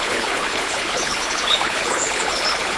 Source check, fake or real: fake